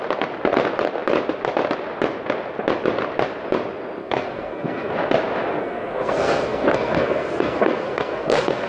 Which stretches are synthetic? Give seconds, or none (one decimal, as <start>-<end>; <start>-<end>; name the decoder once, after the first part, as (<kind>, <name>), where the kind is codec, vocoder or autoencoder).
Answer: 4.0-4.9 (codec, SNAC); 5.6-8.7